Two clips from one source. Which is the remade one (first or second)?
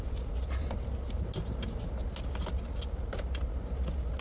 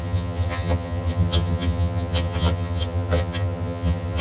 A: second